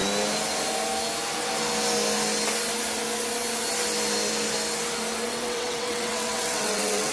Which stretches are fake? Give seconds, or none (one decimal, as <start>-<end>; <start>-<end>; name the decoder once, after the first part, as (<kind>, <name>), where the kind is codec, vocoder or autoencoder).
5.3-7.1 (vocoder, WaveNeXt)